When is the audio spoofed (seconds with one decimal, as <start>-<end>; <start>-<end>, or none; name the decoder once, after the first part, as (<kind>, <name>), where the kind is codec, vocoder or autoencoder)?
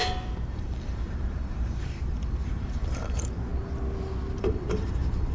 0.5-3.5 (vocoder, BigVGAN v2); 4.4-5.3